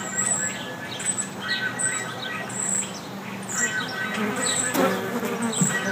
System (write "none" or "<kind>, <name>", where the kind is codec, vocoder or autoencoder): none